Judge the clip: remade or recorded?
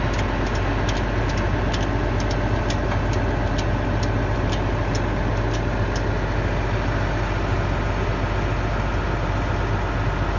recorded